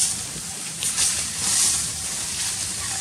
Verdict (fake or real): real